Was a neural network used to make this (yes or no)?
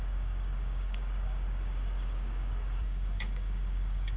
yes